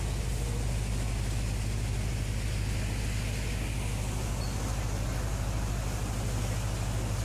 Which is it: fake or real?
real